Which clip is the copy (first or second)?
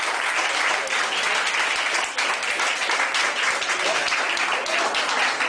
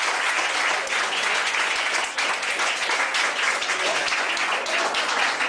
second